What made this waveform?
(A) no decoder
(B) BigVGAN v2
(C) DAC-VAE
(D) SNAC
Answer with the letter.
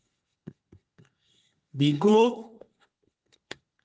D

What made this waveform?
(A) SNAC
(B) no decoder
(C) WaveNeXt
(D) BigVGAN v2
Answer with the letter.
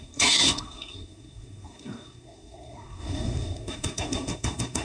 A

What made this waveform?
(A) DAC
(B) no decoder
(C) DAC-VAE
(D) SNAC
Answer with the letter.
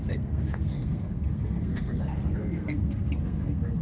D